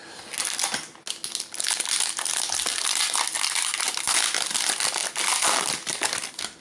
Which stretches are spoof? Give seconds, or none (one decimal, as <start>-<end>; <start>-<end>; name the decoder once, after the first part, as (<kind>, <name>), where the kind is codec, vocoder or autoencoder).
none